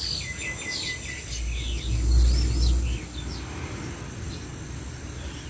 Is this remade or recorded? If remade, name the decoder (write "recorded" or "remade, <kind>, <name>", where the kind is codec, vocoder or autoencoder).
recorded